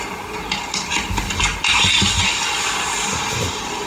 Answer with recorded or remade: recorded